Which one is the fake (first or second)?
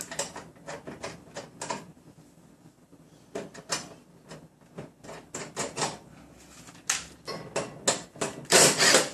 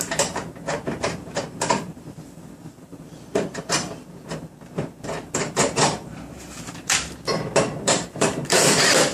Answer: second